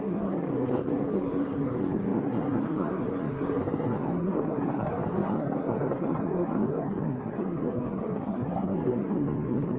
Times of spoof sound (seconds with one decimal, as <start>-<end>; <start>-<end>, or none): 0.0-9.8